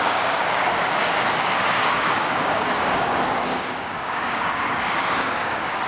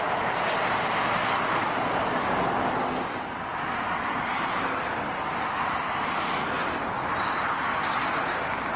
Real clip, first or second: second